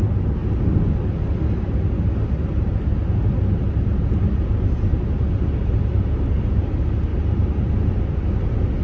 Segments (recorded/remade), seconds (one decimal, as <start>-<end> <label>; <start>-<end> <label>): 0.0-4.9 recorded; 4.9-5.4 remade; 5.4-7.1 recorded; 7.1-8.2 remade; 8.2-8.8 recorded